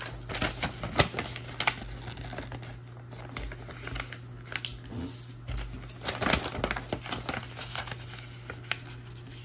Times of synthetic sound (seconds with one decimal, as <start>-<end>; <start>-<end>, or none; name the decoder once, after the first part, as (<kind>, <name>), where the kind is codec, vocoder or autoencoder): none